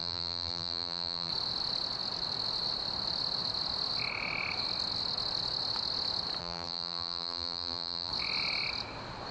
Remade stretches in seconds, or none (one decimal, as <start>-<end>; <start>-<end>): 0.0-1.3; 6.4-8.1